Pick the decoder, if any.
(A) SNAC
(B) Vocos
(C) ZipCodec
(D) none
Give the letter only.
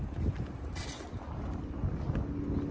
D